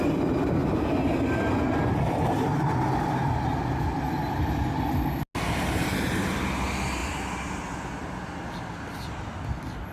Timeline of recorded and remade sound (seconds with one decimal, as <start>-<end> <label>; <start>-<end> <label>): 0.0-9.9 recorded